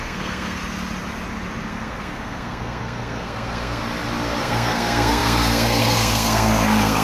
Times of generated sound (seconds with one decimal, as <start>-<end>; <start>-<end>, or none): 0.0-0.6; 1.7-3.8; 4.4-7.0